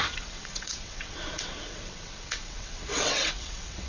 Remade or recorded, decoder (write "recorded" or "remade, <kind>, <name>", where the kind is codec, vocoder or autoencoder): remade, vocoder, WaveNeXt